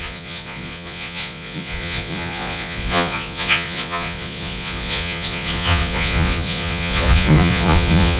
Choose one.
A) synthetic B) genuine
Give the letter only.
A